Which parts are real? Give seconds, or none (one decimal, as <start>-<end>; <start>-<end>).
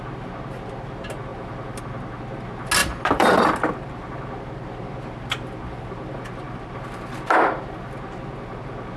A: 0.0-1.3; 1.8-2.8; 7.7-9.0